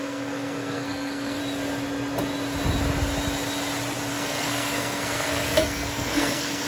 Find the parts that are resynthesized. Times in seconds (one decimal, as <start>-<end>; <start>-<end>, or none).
0.0-1.4; 4.1-6.7